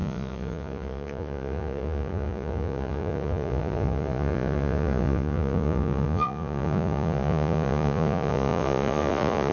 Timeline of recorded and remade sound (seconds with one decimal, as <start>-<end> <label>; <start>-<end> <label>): 0.0-9.5 remade